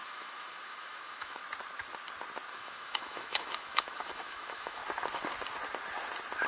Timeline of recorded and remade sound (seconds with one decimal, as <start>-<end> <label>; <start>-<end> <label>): 0.0-1.4 remade; 1.4-2.5 recorded; 2.5-4.8 remade; 4.8-6.5 recorded